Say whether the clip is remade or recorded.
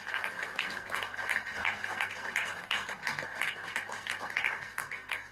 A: remade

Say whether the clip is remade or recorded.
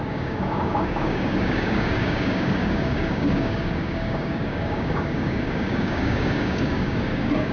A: remade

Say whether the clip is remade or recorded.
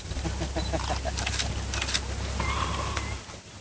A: recorded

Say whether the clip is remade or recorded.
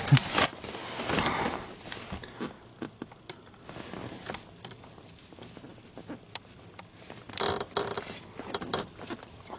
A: recorded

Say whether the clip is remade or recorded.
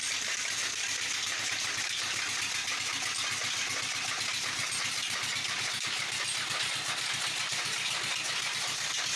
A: recorded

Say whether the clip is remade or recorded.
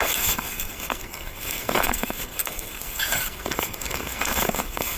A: remade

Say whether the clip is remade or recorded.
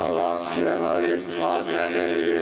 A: remade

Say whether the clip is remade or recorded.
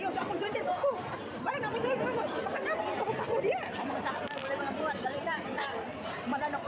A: recorded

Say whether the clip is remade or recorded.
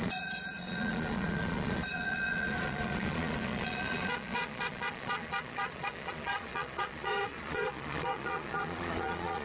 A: remade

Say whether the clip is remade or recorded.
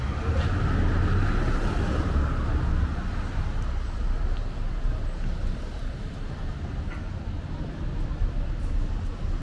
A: recorded